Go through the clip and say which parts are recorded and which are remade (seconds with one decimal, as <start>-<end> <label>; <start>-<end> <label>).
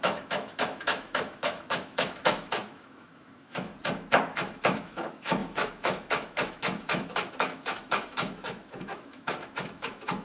0.0-3.7 remade; 3.7-4.2 recorded; 4.2-10.2 remade